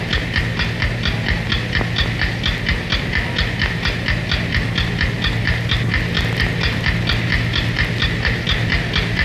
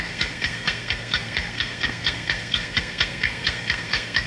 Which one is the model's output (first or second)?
second